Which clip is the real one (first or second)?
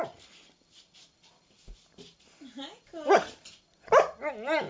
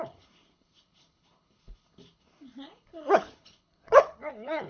first